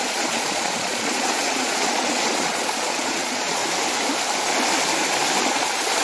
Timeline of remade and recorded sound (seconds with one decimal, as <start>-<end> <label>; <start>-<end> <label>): 0.0-3.6 remade; 3.6-5.4 recorded; 5.4-6.0 remade